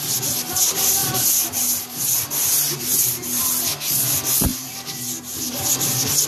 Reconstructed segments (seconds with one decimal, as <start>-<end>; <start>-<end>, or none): none